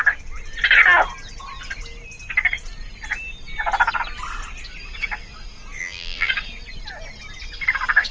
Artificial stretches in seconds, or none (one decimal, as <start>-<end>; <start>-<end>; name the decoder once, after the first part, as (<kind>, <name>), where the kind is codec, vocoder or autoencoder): 5.8-6.3 (vocoder, BigVGAN v2)